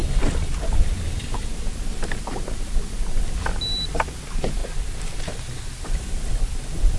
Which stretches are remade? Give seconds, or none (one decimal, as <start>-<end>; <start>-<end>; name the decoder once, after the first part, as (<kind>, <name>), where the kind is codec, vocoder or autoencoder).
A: none